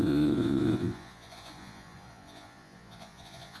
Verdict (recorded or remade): remade